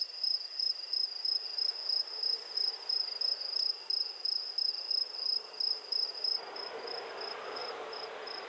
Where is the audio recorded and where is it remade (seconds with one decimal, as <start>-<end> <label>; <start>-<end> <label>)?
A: 0.0-8.5 recorded